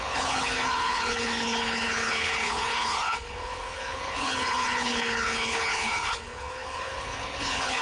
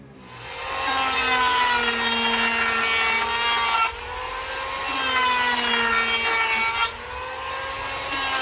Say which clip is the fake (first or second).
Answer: first